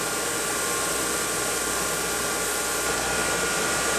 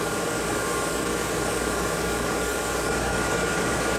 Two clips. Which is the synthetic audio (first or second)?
second